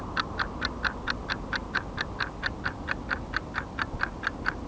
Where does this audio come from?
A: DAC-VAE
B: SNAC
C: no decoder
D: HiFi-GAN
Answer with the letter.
C